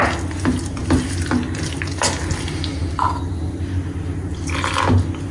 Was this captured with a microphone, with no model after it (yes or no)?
yes